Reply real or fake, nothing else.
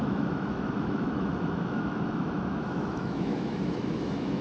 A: fake